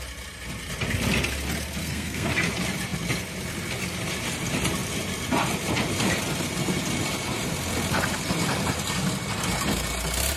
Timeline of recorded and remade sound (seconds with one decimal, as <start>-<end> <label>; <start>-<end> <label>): 0.0-1.8 recorded; 1.8-2.3 remade; 2.3-10.4 recorded